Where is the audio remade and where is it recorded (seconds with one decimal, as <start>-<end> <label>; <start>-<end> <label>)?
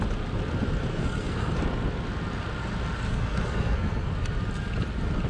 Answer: 0.0-0.9 recorded; 0.9-1.6 remade; 1.6-3.1 recorded; 3.1-4.1 remade; 4.1-5.3 recorded